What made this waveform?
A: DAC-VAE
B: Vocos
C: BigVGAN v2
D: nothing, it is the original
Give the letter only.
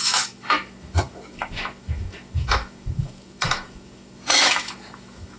A